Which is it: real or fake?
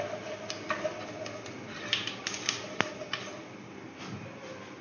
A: real